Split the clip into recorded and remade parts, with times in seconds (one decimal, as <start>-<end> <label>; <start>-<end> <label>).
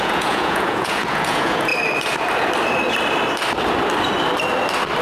0.0-1.7 remade; 1.7-5.0 recorded